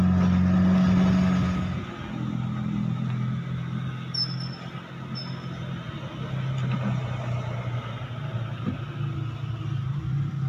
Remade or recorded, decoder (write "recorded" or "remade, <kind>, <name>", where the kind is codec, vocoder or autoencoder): recorded